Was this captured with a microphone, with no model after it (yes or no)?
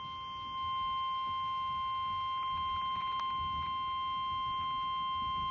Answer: yes